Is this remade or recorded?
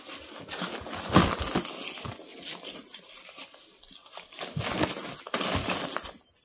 recorded